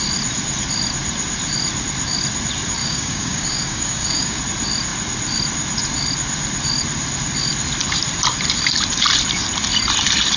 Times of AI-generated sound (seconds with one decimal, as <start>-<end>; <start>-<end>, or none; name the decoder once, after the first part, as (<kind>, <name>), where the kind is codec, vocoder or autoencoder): 2.8-4.4 (codec, DAC)